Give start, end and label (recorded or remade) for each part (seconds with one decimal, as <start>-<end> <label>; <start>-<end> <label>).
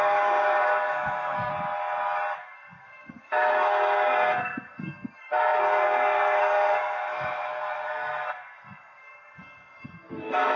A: 0.0-1.5 remade; 1.5-2.4 recorded; 2.4-10.6 remade